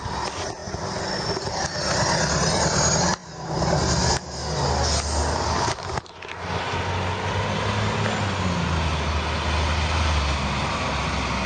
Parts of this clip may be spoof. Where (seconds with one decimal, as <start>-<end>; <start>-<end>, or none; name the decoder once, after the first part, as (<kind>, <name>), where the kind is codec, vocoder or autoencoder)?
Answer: none